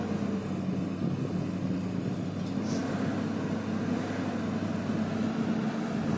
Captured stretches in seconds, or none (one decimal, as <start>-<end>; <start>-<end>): 0.0-6.2